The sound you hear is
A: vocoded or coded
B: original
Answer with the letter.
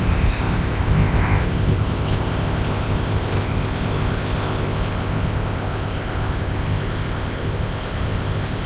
A